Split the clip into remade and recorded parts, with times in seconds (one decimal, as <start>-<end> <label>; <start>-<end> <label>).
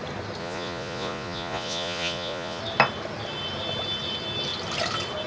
0.0-0.4 recorded; 0.4-2.6 remade; 2.6-5.3 recorded